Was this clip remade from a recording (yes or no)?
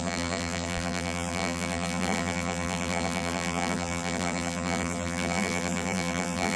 yes